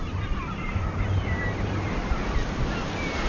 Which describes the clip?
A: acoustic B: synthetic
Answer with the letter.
A